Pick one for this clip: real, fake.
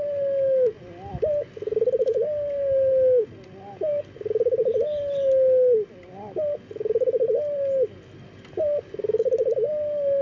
real